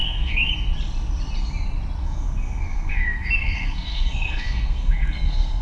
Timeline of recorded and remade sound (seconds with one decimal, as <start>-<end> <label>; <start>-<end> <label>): 0.0-0.5 remade; 0.5-2.0 recorded; 2.0-5.6 remade